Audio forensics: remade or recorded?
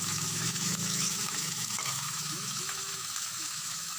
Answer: remade